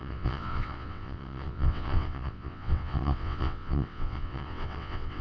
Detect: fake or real fake